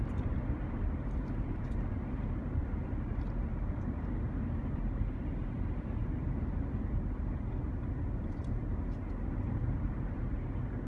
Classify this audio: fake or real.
fake